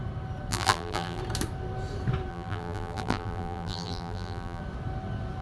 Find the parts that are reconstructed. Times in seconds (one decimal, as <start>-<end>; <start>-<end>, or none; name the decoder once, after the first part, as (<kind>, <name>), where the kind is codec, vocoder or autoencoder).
0.5-1.2 (vocoder, BigVGAN v2); 2.3-4.6